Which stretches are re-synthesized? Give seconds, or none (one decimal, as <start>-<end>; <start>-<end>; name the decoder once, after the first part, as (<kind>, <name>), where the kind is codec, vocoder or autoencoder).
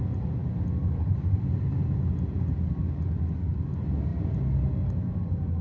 none